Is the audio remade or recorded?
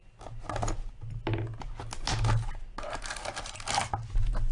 recorded